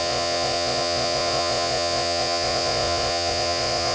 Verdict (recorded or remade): remade